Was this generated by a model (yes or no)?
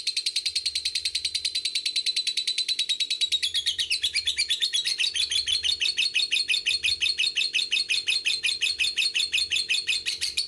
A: yes